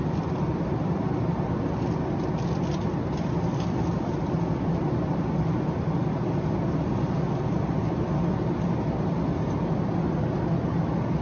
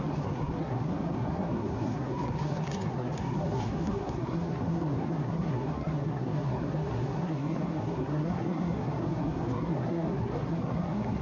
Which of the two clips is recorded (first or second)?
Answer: first